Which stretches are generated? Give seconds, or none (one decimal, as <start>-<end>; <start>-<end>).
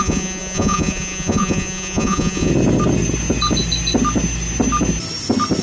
0.0-2.5